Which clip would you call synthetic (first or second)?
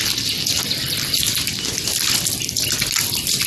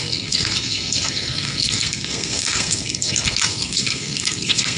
second